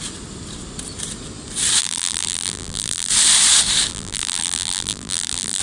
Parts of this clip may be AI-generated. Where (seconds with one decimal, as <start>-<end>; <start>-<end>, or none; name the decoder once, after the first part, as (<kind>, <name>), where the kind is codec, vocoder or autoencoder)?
1.8-3.1 (vocoder, BigVGAN v2); 3.9-5.6